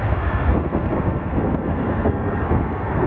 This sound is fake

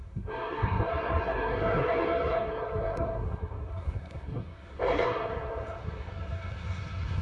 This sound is fake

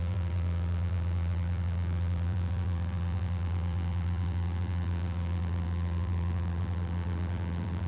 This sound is fake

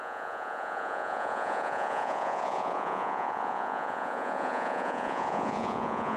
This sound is fake